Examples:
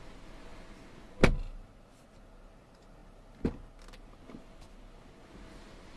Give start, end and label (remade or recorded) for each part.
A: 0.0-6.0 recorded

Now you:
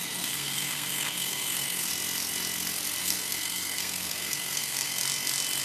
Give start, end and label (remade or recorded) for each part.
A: 0.0-1.9 remade; 1.9-3.0 recorded; 3.0-5.0 remade; 5.0-5.6 recorded

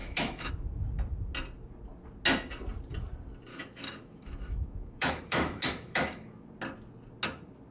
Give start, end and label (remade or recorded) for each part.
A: 0.0-0.5 remade; 0.5-3.5 recorded; 3.5-6.5 remade; 6.5-7.7 recorded

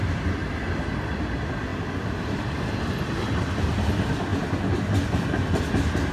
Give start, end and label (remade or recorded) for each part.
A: 0.0-6.1 recorded

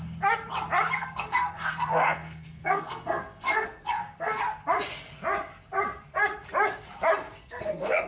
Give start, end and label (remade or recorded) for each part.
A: 0.0-1.0 recorded; 1.0-4.4 remade; 4.4-7.4 recorded; 7.4-8.1 remade

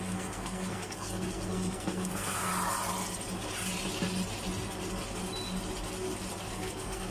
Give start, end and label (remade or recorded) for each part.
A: 0.0-2.5 remade; 2.5-6.5 recorded; 6.5-7.1 remade

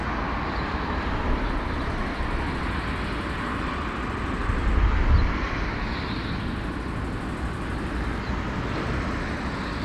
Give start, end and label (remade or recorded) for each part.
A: 0.0-9.8 recorded

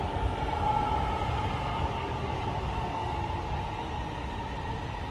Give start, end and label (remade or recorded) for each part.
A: 0.0-1.7 recorded; 1.7-3.6 remade; 3.6-5.1 recorded